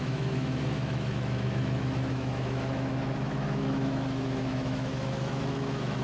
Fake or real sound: fake